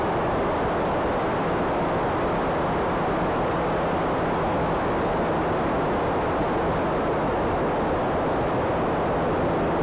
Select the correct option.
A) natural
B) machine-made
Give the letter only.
A